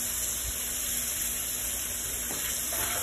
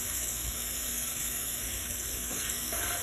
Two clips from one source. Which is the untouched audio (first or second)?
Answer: first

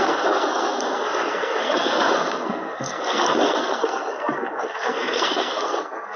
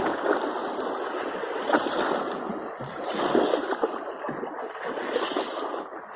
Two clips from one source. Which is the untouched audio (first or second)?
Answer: second